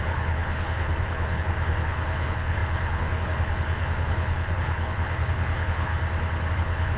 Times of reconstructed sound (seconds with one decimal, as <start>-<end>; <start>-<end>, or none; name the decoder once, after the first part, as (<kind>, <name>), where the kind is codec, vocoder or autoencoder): 0.0-5.9 (codec, HILCodec); 6.5-7.0